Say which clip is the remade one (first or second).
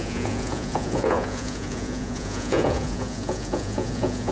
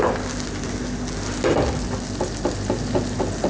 first